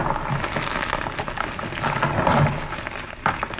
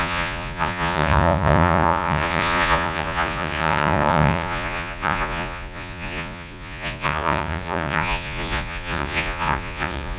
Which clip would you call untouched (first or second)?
first